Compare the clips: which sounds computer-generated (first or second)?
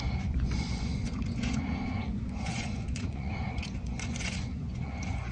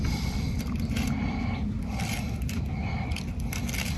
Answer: first